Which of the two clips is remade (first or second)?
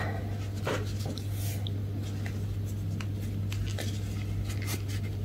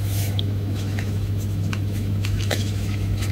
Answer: second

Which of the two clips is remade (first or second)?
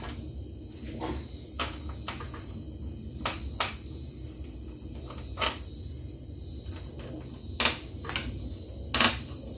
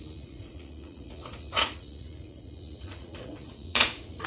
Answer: second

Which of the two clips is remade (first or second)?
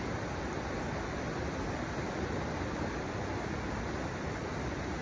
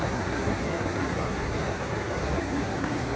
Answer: second